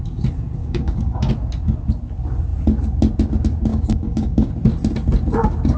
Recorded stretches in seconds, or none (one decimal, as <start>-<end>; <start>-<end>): 0.0-0.6; 1.3-3.7; 4.5-5.8